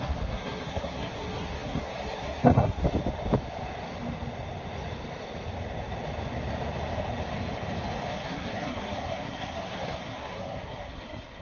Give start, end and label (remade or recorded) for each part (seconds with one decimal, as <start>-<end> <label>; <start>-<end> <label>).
0.0-2.8 remade; 2.8-8.1 recorded; 8.1-11.4 remade